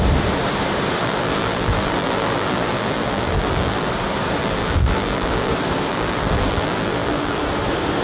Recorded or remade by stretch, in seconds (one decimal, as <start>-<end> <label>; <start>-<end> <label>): 0.0-1.0 recorded; 1.0-3.9 remade; 3.9-4.4 recorded; 4.4-5.5 remade; 5.5-5.9 recorded; 5.9-7.4 remade; 7.4-8.0 recorded